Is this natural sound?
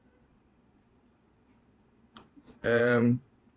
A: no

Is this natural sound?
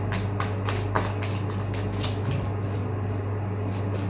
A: yes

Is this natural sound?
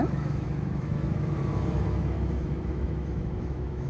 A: no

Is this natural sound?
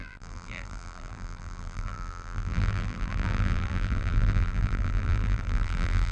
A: no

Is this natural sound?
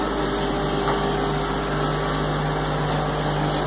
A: yes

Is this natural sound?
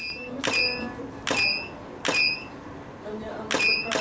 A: yes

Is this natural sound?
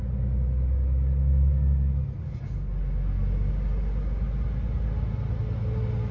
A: yes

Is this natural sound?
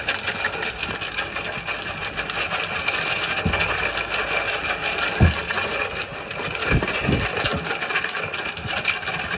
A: yes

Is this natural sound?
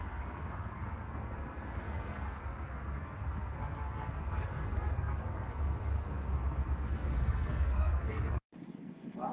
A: no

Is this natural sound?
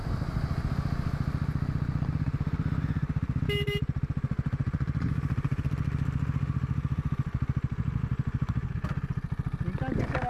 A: yes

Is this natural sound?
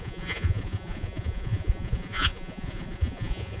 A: no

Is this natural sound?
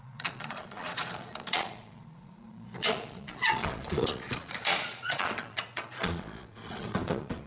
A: no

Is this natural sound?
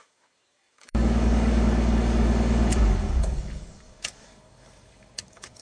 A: no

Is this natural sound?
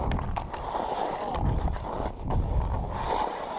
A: yes